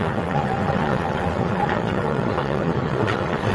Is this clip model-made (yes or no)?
yes